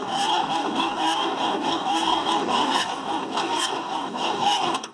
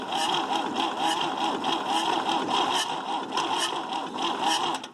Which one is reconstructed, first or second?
first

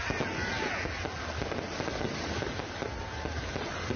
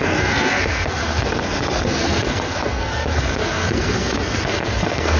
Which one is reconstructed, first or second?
second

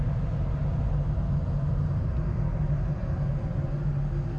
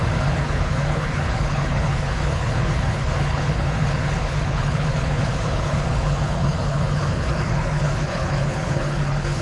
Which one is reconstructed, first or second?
second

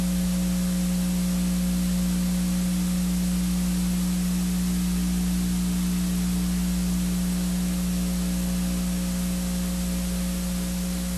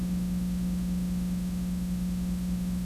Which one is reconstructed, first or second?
second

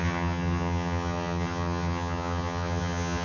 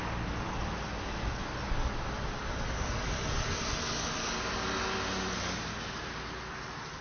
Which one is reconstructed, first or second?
first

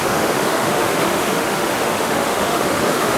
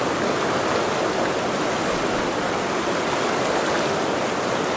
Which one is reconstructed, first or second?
first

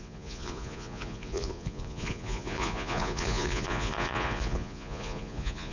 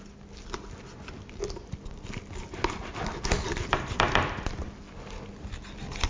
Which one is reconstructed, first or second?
first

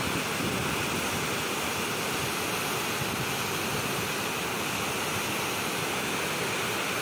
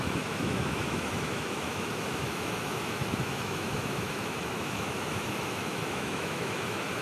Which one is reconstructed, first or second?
second